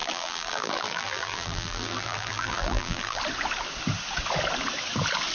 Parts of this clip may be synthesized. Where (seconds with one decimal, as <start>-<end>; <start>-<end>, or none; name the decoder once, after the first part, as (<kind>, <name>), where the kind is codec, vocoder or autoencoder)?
0.0-3.2 (vocoder, BigVGAN v2)